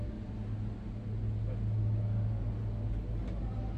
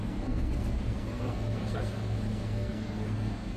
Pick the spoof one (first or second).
second